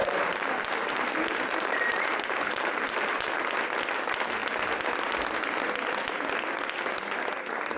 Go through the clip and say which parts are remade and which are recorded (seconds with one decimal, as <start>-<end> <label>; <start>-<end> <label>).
0.0-3.4 remade; 3.4-7.8 recorded